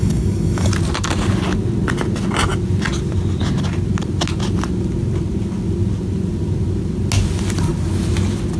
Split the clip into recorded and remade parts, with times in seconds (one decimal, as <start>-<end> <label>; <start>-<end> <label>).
0.0-0.7 remade; 0.7-8.6 recorded